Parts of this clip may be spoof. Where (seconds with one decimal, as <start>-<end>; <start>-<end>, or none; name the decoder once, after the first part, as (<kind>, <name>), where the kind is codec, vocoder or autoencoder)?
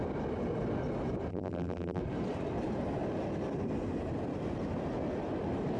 1.3-2.0 (vocoder, BigVGAN v2)